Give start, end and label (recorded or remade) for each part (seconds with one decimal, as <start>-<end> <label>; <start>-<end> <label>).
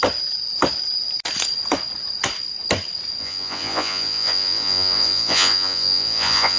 0.0-3.2 recorded; 3.2-6.6 remade